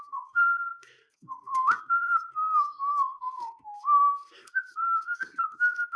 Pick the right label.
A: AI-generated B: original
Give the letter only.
A